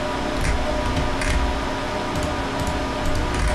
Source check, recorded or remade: recorded